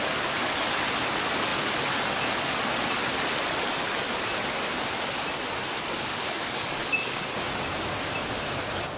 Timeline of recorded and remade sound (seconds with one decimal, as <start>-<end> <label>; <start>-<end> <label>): 0.0-6.1 recorded; 6.1-7.2 remade; 7.2-9.0 recorded